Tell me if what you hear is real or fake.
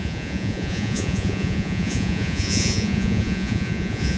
fake